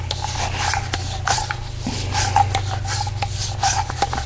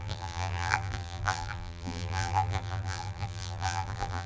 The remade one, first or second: second